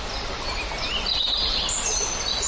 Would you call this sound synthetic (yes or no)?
no